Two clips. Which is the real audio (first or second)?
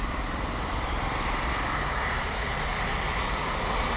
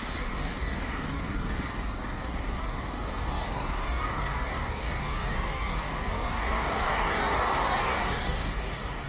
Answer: first